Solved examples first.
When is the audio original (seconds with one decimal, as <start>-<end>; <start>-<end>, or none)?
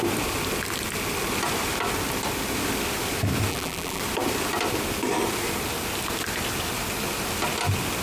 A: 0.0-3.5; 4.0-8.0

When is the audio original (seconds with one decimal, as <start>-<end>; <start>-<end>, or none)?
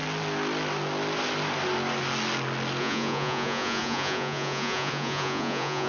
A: 0.0-2.8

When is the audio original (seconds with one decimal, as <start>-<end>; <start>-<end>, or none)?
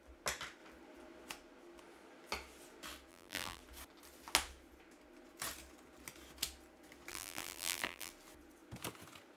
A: 0.0-3.1; 3.6-7.1; 8.1-9.4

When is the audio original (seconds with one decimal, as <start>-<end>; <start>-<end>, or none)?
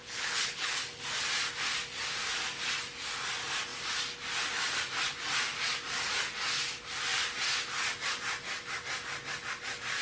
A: 0.8-10.0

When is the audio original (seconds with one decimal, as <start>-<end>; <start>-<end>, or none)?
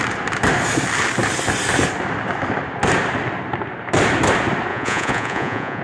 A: 0.0-4.7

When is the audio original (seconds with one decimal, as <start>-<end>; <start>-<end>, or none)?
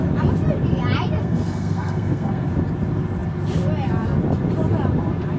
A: 0.0-1.2; 2.5-5.4